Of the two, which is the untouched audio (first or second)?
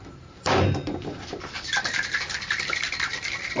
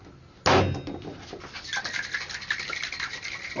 second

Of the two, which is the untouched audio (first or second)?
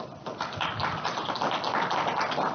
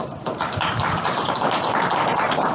first